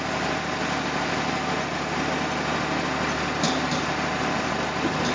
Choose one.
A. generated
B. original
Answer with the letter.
B